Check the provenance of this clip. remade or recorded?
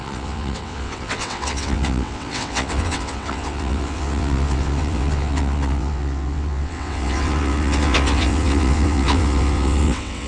remade